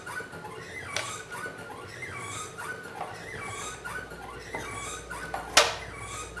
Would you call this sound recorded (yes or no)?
yes